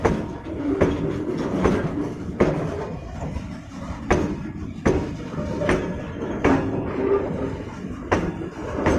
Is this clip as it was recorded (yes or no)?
yes